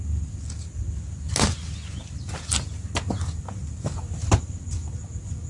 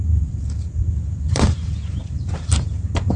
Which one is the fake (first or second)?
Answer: second